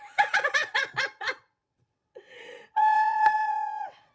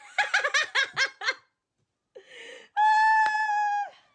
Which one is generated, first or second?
first